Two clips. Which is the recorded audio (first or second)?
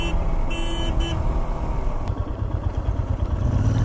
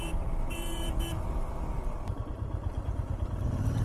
first